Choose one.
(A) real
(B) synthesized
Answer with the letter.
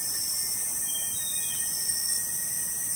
A